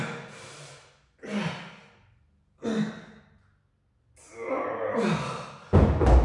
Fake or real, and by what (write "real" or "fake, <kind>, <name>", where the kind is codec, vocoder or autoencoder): real